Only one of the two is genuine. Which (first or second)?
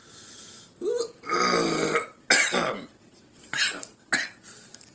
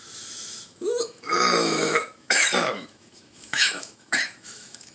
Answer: first